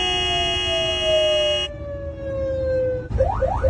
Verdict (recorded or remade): recorded